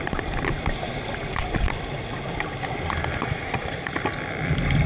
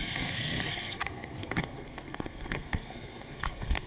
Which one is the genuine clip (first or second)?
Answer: first